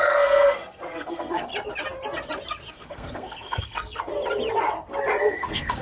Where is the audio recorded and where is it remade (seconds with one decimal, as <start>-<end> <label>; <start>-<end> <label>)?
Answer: 0.0-1.5 remade; 1.5-2.7 recorded; 2.7-4.1 remade; 4.1-5.2 recorded; 5.2-5.8 remade